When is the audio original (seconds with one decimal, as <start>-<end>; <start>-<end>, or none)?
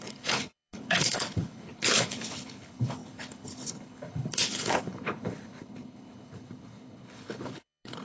none